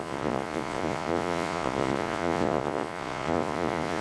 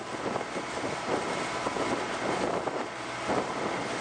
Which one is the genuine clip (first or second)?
second